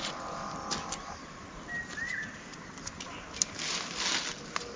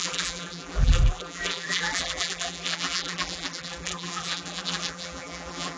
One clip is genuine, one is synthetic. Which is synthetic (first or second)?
second